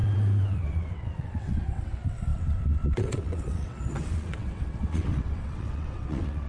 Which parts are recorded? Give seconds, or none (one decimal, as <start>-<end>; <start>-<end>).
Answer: none